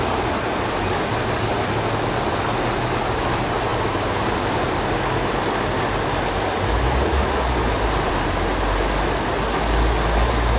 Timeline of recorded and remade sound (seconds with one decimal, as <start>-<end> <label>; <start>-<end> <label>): 0.0-10.6 recorded